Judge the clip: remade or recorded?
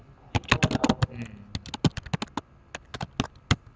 recorded